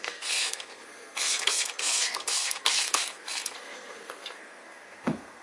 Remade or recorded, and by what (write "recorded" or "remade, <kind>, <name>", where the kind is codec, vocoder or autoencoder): remade, codec, SNAC